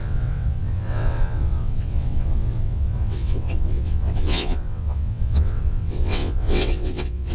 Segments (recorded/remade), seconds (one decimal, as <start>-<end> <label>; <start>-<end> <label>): 0.0-7.3 remade